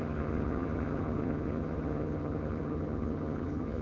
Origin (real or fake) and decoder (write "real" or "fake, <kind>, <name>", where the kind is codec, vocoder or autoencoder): fake, vocoder, HiFi-GAN